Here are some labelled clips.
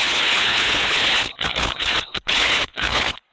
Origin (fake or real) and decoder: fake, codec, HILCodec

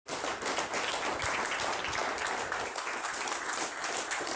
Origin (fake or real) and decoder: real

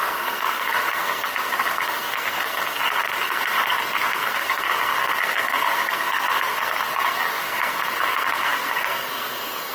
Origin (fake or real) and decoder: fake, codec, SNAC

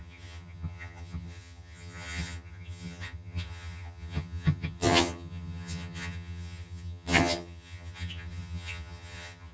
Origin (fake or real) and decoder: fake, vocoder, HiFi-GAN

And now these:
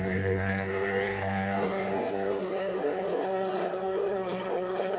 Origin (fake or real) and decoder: fake, codec, SNAC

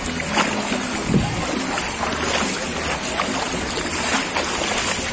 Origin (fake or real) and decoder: real